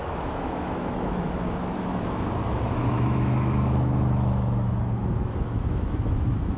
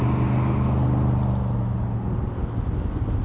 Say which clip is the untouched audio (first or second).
second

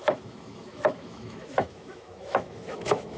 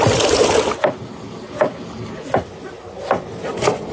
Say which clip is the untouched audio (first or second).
second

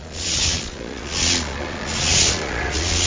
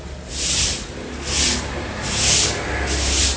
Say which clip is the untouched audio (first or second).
second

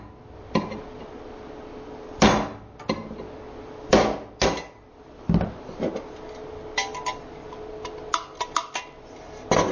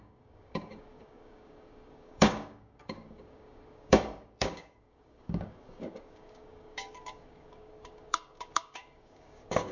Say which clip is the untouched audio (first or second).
first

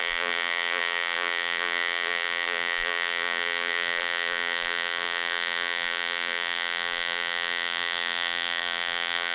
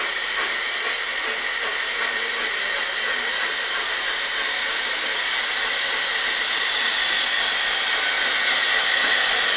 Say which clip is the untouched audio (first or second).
second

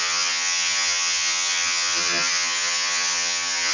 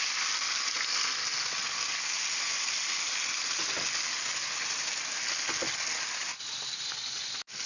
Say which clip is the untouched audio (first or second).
second